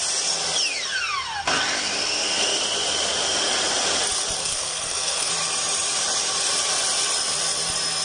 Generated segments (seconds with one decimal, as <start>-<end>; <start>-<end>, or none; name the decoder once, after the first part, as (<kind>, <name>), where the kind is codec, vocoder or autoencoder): 4.4-5.3 (codec, SNAC)

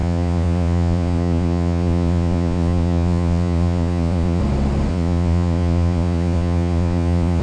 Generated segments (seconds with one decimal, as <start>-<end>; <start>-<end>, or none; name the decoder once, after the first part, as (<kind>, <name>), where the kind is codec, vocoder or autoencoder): 0.0-4.4 (vocoder, Vocos); 4.9-7.4

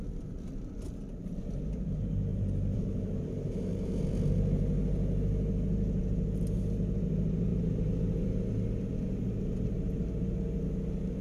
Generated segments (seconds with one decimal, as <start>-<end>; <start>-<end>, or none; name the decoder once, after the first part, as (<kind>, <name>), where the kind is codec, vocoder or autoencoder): 2.3-4.0 (vocoder, BigVGAN v2); 7.5-8.3

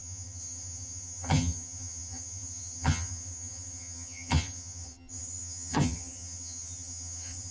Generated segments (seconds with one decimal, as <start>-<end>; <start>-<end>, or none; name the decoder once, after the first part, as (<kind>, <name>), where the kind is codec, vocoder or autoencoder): 0.0-7.5 (vocoder, HiFi-GAN)

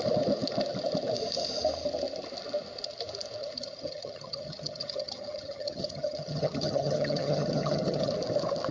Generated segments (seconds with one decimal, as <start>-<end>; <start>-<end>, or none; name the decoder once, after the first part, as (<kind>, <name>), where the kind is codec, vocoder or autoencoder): 3.4-8.1 (vocoder, HiFi-GAN)

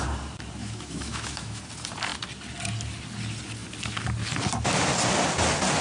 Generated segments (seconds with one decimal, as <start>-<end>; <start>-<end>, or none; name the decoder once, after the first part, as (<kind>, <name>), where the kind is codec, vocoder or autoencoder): 0.6-1.6 (autoencoder, DAC-VAE)

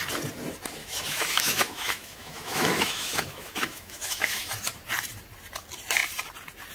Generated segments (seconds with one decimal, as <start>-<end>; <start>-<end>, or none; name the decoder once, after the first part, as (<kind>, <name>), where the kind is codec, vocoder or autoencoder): 0.8-4.5 (autoencoder, DAC-VAE)

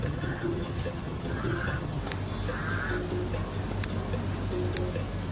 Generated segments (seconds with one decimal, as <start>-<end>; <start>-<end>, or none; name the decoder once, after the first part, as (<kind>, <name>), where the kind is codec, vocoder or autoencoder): 0.0-2.0 (vocoder, HiFi-GAN)